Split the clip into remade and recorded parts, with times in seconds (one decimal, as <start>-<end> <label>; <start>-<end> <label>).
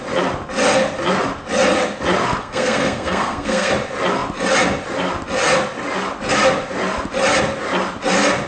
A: 0.0-2.4 recorded; 2.4-3.7 remade; 3.7-8.5 recorded